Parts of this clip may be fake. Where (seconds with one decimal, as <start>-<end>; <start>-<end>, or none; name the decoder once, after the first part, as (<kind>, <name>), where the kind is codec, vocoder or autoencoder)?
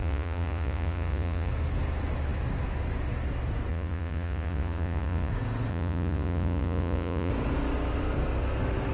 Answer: 0.0-1.5 (vocoder, Vocos); 3.7-5.3; 5.7-7.3